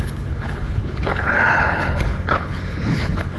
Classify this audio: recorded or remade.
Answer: remade